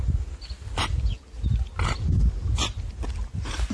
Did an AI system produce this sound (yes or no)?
no